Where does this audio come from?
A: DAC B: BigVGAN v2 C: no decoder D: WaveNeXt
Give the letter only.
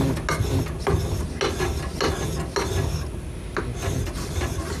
C